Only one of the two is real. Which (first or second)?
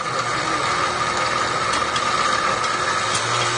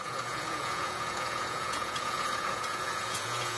first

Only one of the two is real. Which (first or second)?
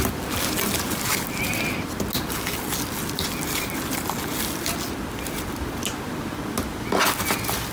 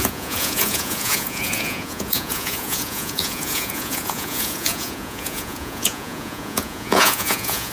first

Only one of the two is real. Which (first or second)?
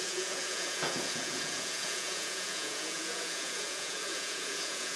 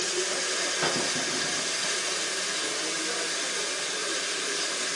second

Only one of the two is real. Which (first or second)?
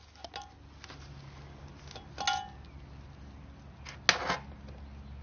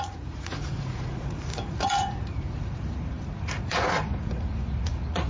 first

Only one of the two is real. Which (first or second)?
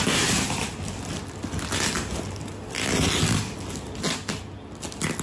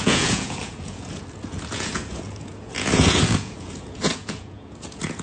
first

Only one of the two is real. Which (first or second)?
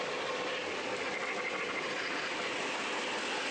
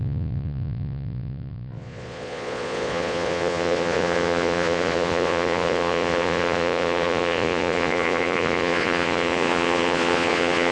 first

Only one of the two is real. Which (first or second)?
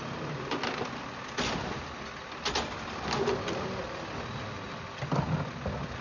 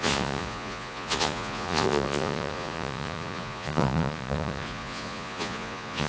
first